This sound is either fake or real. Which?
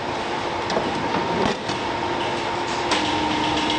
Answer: real